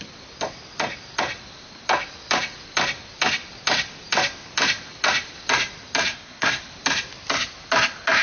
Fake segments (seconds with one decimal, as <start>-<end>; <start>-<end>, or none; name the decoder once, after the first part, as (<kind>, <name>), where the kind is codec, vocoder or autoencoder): 6.1-6.6 (codec, SNAC)